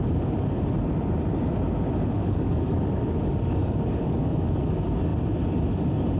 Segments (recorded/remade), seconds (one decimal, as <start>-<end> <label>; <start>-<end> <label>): 0.0-2.2 recorded; 2.2-4.6 remade; 4.6-6.2 recorded